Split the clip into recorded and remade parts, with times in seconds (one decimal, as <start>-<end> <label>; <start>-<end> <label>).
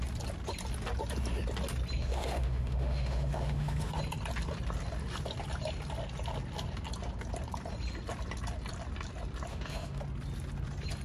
0.0-2.0 recorded; 2.0-3.9 remade; 3.9-9.5 recorded; 9.5-10.0 remade; 10.0-11.0 recorded